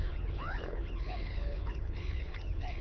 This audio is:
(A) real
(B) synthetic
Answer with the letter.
B